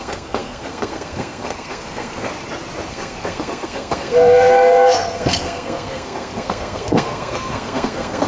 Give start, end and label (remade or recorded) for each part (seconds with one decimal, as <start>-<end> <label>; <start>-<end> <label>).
0.0-2.3 remade; 2.3-2.9 recorded; 2.9-8.3 remade